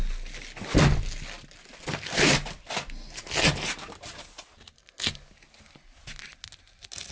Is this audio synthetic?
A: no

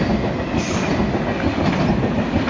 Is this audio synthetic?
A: no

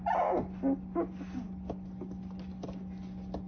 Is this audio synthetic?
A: no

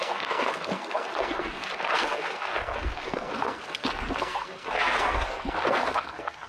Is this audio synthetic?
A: yes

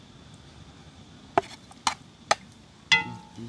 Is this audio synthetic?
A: no